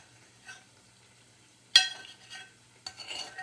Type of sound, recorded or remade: recorded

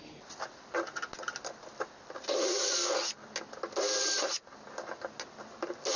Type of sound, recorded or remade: recorded